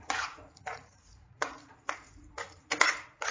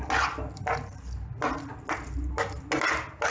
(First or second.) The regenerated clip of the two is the first